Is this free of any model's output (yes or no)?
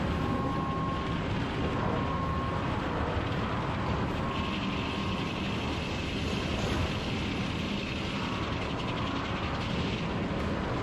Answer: yes